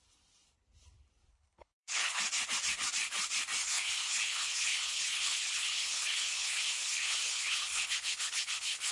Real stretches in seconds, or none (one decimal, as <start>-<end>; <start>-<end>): 0.0-1.3; 2.2-3.6